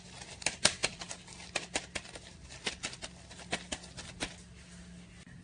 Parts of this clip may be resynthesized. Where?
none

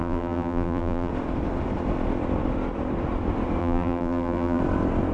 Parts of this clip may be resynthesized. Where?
0.0-1.1 (vocoder, BigVGAN v2); 3.6-4.6

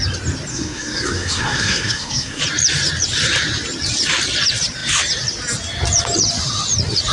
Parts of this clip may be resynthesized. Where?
0.5-2.4 (codec, SNAC)

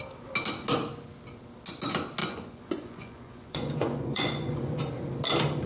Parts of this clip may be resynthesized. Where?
2.2-4.8 (vocoder, Vocos)

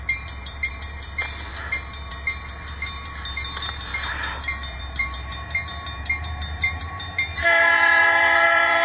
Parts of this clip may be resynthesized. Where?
0.0-8.8 (vocoder, BigVGAN v2)

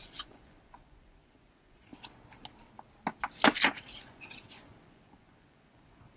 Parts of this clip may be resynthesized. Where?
0.0-1.9 (vocoder, Vocos); 4.0-6.2